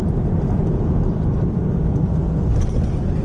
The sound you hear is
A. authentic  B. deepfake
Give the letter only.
A